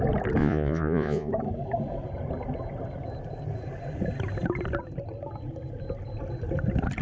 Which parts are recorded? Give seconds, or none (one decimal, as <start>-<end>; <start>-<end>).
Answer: 0.0-0.4; 1.3-7.0